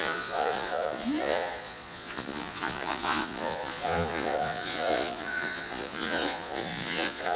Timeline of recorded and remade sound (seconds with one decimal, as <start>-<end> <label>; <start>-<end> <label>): 0.0-7.4 remade